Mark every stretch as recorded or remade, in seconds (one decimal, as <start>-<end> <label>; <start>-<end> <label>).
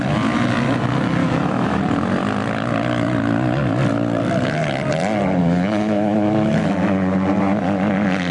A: 0.0-1.2 recorded; 1.2-1.8 remade; 1.8-5.4 recorded; 5.4-6.7 remade; 6.7-8.3 recorded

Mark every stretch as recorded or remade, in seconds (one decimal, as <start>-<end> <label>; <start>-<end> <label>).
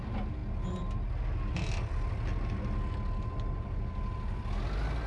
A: 0.0-5.1 recorded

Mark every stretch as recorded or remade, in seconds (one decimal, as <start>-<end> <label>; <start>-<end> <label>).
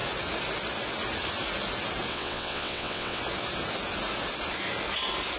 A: 0.0-2.1 recorded; 2.1-3.2 remade; 3.2-5.4 recorded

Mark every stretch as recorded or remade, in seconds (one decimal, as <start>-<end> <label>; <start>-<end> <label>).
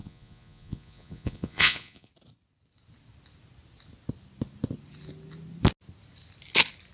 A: 0.0-2.1 remade; 2.1-6.9 recorded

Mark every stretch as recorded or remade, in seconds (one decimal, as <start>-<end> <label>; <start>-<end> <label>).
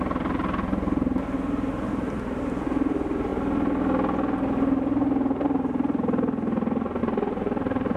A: 0.0-3.3 remade; 3.3-7.0 recorded; 7.0-8.0 remade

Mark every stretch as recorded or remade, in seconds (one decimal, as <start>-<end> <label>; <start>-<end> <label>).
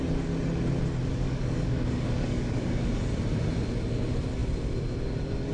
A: 0.0-1.1 recorded; 1.1-2.9 remade; 2.9-5.5 recorded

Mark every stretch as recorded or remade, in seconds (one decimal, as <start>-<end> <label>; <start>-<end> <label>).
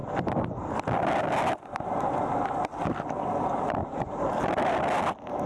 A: 0.0-3.8 recorded; 3.8-4.4 remade; 4.4-5.5 recorded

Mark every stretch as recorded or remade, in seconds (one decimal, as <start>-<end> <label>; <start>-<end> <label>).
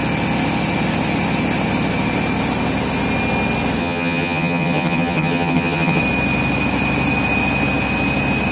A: 0.0-3.8 recorded; 3.8-6.0 remade; 6.0-8.5 recorded